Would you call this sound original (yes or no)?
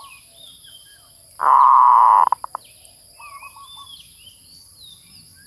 yes